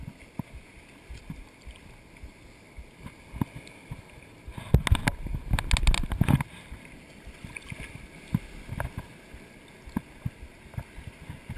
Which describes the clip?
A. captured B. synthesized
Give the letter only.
A